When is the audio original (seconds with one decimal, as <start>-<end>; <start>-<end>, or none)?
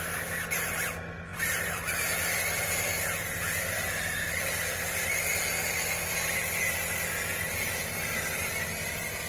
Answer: 0.0-9.3